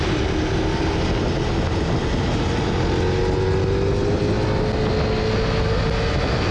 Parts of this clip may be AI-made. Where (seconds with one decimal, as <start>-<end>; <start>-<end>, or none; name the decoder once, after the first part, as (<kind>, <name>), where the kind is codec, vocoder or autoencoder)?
none